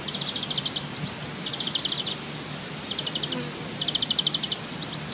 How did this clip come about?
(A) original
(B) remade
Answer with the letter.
A